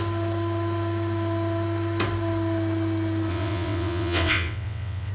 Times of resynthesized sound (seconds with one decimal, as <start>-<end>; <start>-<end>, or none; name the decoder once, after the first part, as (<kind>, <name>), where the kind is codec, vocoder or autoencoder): 3.3-5.1 (vocoder, WaveNeXt)

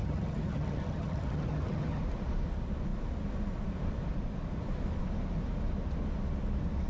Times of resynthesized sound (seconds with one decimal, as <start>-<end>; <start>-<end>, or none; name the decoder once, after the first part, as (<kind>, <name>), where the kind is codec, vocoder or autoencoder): 0.0-2.0 (vocoder, HiFi-GAN)

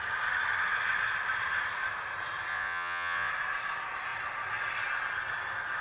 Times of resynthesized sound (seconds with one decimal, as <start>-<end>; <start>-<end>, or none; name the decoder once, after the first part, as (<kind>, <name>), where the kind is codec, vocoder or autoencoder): 2.5-3.3 (vocoder, Vocos)

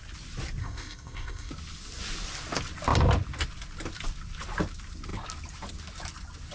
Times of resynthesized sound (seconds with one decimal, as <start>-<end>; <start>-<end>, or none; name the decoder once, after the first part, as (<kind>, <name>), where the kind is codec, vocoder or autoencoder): 0.6-1.5 (codec, ZipCodec)

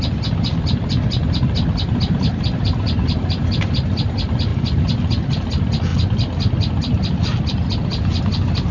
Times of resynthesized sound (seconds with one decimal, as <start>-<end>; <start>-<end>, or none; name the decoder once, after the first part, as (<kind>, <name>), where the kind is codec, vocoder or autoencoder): none